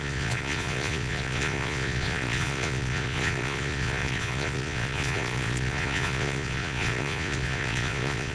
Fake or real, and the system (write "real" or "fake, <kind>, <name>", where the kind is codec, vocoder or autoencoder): fake, vocoder, Vocos